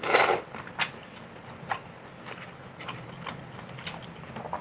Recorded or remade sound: recorded